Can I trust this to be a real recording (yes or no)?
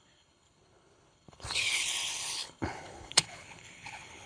no